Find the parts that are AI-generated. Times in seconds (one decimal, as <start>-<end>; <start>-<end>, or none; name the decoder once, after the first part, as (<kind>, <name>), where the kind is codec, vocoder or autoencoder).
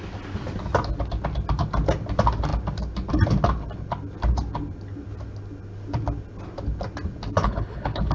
7.4-8.1 (codec, HILCodec)